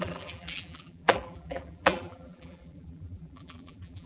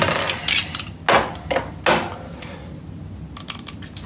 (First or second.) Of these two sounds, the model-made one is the first